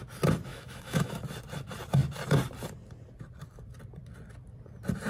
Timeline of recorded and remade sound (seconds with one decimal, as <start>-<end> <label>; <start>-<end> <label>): 0.0-0.5 recorded; 0.5-1.1 remade; 1.1-5.1 recorded